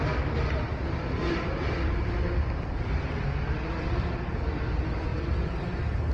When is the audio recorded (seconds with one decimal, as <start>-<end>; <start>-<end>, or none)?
0.0-0.7; 1.8-5.1; 5.6-6.1